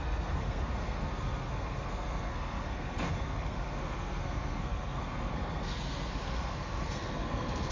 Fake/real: fake